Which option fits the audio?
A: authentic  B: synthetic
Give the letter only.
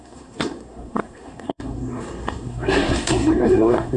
B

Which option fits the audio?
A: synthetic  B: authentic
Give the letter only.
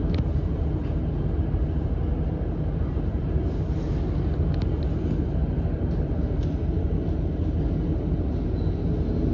B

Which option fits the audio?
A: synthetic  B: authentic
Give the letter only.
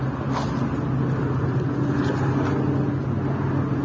B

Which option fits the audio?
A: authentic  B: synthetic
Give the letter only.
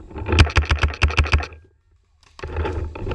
A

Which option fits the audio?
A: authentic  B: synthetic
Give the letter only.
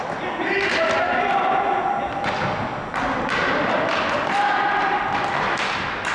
A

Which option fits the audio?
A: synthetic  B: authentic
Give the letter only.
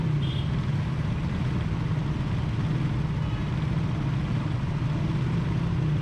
B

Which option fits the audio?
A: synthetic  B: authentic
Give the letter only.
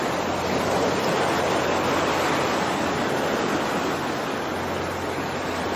B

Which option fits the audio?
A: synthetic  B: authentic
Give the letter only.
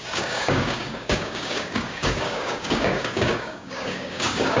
A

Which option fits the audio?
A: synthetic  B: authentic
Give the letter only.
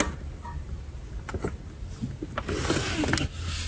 B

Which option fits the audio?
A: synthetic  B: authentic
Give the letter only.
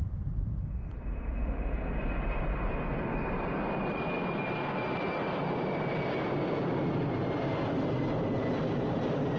B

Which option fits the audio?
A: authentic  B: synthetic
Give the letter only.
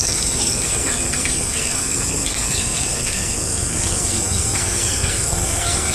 B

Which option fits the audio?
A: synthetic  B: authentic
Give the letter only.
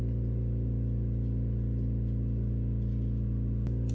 B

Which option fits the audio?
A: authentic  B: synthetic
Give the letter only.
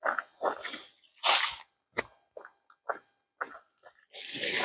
A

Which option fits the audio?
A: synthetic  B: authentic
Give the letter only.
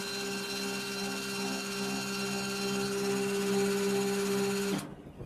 B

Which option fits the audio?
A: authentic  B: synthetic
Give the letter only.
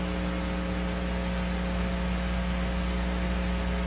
A